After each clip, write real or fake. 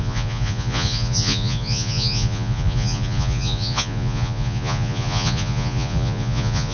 fake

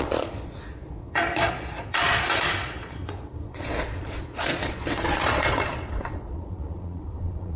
fake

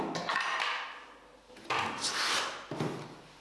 real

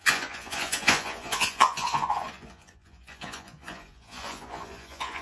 fake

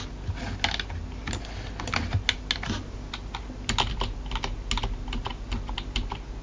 real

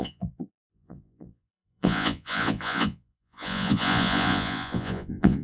fake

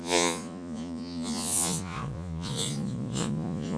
fake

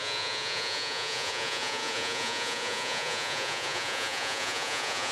fake